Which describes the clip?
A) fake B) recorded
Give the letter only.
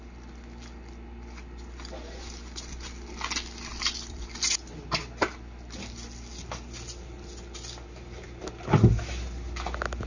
B